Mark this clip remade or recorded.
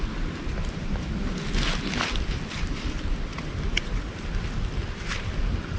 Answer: recorded